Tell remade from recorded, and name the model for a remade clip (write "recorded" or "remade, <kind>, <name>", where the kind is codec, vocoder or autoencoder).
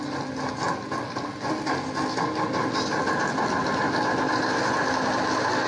recorded